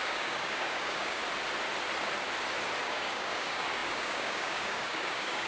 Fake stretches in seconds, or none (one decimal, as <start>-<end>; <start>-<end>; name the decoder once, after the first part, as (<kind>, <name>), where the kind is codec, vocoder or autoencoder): 0.0-1.2 (codec, DAC); 2.8-5.5